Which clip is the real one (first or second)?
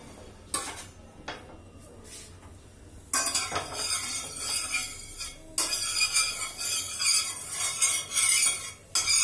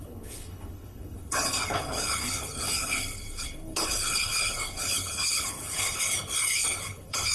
first